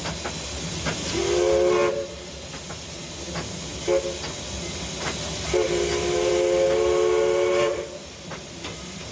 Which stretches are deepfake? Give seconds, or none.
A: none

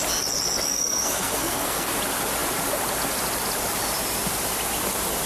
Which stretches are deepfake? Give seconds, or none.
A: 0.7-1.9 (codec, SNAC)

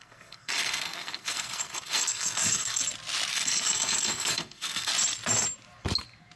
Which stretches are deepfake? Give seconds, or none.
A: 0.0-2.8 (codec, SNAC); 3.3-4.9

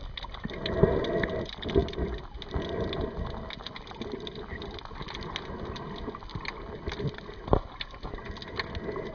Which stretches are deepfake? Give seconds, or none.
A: none

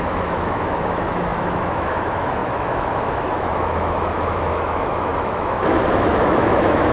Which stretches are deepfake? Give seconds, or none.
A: 0.0-6.9 (autoencoder, DAC-VAE)

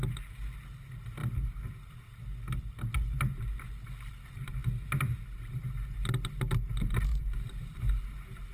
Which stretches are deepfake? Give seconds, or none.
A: 7.1-7.9 (vocoder, BigVGAN v2)

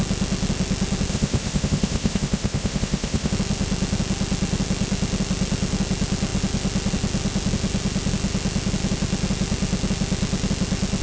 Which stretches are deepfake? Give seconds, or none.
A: 1.1-3.3 (codec, ZipCodec)

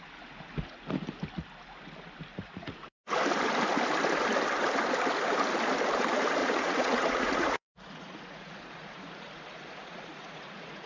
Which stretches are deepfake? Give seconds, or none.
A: 2.3-3.0 (vocoder, Vocos); 6.4-10.9